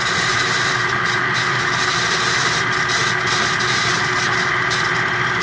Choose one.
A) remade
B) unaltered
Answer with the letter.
B